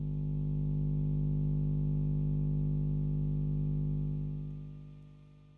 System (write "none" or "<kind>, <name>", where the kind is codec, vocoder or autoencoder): none